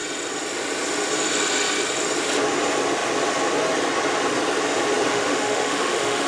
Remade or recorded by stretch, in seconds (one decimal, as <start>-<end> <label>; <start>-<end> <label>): 0.0-5.1 recorded; 5.1-6.3 remade